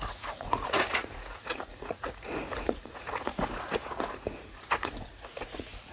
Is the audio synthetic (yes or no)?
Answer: yes